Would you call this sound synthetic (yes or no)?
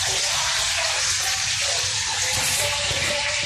yes